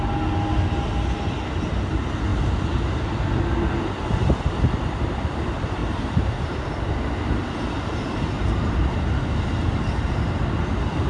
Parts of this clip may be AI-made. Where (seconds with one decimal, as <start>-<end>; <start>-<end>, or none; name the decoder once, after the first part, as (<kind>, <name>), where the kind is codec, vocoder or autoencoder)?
2.3-3.0 (vocoder, BigVGAN v2); 5.8-10.2